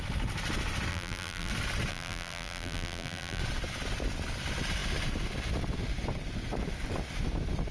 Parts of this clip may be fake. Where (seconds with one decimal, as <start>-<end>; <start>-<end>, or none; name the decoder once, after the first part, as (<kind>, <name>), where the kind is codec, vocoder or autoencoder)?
0.9-1.5 (vocoder, BigVGAN v2); 1.9-3.4